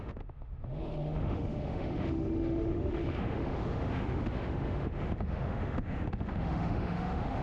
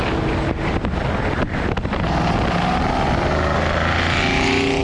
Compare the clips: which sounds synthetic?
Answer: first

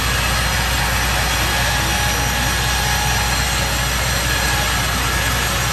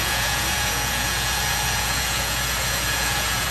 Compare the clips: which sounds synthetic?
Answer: second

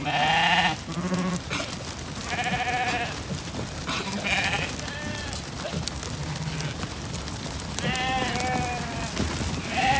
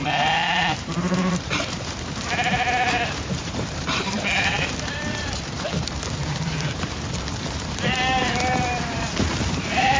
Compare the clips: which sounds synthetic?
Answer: second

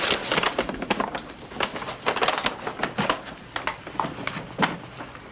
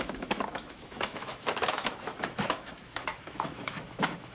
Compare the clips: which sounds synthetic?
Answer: second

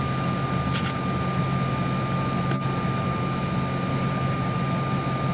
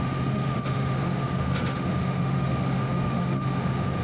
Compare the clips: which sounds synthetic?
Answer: second